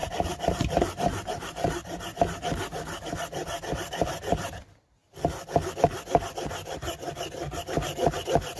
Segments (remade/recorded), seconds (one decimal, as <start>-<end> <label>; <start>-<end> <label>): 0.0-2.2 remade; 2.2-3.4 recorded; 3.4-4.6 remade; 4.6-8.6 recorded